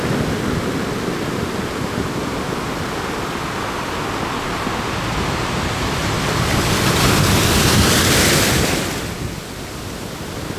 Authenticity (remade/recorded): recorded